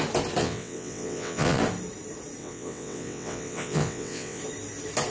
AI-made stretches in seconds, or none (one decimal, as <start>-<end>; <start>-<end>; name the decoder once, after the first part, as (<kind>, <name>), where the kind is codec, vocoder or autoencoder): 0.4-1.6 (vocoder, WaveNeXt); 2.4-4.4